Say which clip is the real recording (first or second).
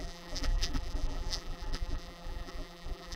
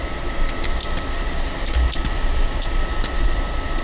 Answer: second